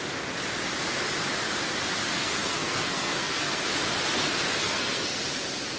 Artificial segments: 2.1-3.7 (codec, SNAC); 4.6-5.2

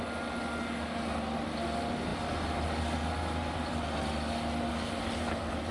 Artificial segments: none

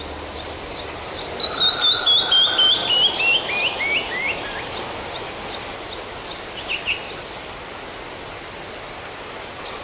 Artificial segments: none

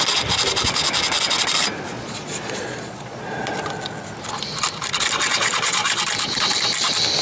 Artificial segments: 1.9-3.5 (vocoder, Vocos); 5.3-6.0

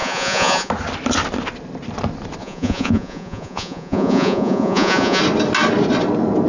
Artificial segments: 0.0-0.7 (vocoder, Vocos); 2.4-5.2

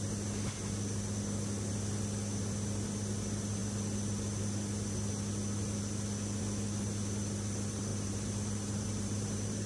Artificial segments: 7.9-9.7 (vocoder, BigVGAN v2)

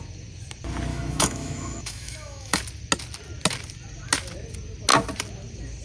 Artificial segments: 0.9-2.6 (autoencoder, DAC-VAE)